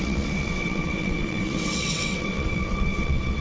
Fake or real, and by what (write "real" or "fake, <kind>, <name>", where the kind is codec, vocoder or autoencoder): fake, vocoder, WaveNeXt